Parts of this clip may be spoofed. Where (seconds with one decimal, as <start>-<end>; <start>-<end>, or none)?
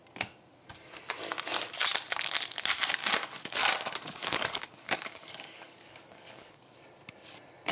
3.0-3.7; 4.2-6.7